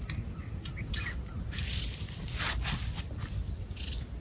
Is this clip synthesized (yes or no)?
no